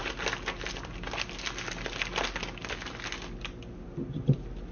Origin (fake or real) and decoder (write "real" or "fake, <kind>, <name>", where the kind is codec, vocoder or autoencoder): real